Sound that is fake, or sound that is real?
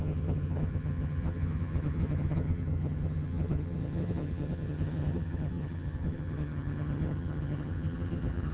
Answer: fake